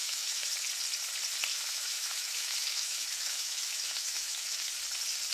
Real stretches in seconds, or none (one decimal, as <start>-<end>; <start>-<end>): 0.5-1.5; 4.7-5.3